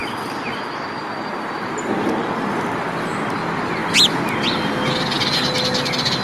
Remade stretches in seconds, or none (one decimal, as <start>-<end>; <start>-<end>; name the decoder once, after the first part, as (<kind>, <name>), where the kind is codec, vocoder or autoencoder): none